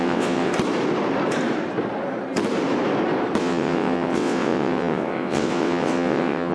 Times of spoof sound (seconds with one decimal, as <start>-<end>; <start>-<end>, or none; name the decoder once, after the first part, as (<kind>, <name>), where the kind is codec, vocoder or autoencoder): 0.0-0.5 (vocoder, WaveNeXt); 3.4-6.5